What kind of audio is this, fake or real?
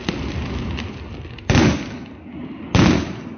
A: real